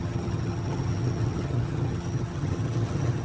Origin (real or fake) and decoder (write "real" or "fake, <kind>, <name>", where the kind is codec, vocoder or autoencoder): fake, vocoder, HiFi-GAN